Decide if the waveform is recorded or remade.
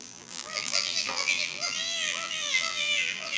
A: remade